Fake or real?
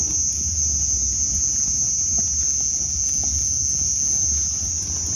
real